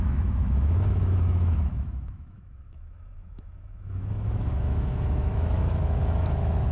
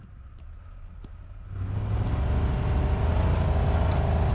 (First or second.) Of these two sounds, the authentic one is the second